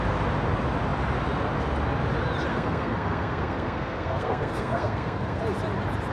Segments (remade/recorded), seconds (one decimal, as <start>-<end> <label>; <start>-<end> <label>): 0.0-2.5 recorded; 2.5-5.4 remade; 5.4-6.1 recorded